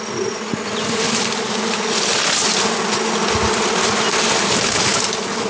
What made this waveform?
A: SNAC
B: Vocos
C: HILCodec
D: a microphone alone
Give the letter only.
D